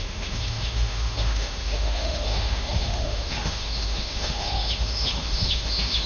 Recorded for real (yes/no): no